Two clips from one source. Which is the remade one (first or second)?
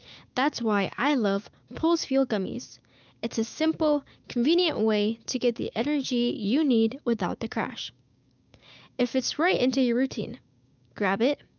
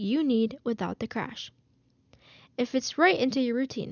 first